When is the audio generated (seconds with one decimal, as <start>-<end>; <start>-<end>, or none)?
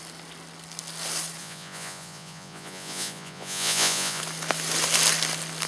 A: 1.4-4.2